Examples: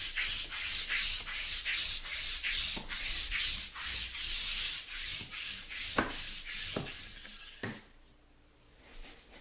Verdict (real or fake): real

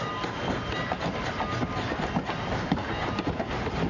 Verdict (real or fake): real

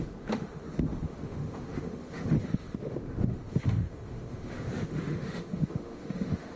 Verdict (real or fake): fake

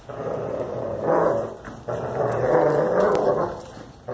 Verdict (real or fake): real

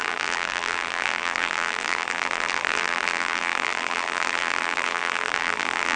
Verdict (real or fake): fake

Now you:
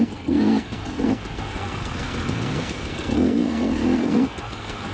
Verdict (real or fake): fake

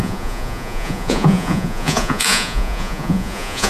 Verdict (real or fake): fake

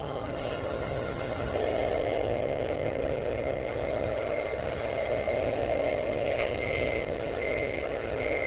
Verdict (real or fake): fake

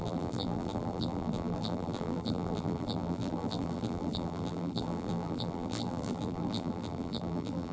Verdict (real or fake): fake